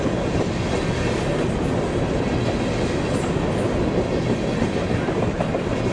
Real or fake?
real